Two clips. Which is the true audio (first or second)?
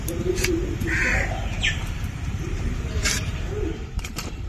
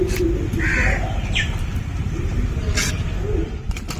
second